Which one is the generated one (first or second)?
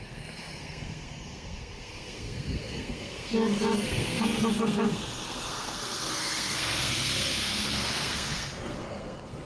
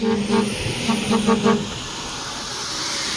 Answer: first